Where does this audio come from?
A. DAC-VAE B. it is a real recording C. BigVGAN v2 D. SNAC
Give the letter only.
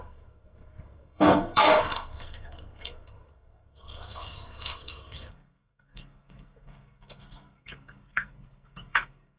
D